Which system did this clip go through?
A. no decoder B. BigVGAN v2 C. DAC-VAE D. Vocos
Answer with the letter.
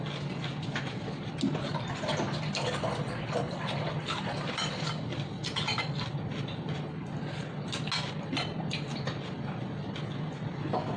A